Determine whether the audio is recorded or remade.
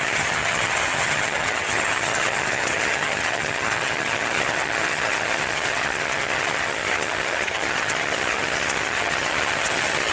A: remade